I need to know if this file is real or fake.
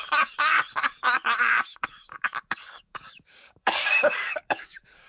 fake